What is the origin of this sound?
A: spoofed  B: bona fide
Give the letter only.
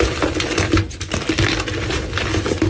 B